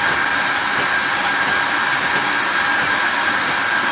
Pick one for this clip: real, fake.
real